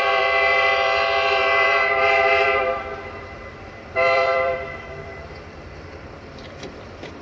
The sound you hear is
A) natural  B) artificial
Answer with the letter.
B